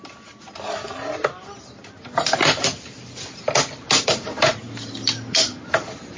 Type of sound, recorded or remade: recorded